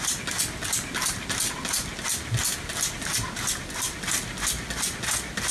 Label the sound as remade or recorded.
recorded